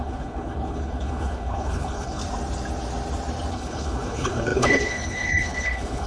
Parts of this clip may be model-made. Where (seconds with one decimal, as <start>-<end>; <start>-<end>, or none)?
0.0-2.2; 3.5-6.1